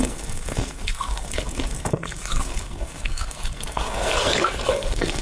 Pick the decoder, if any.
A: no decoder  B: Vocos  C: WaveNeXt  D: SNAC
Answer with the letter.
D